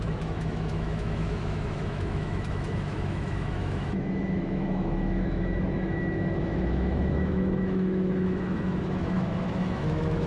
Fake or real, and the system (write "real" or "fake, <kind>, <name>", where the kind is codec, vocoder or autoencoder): fake, autoencoder, DAC-VAE